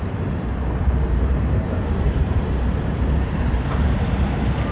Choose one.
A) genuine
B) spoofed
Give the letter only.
B